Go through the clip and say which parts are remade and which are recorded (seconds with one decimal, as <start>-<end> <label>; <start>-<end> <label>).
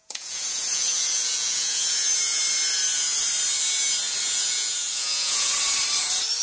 0.0-2.4 remade; 2.4-4.2 recorded; 4.2-5.5 remade; 5.5-6.4 recorded